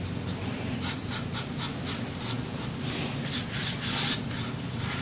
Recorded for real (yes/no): yes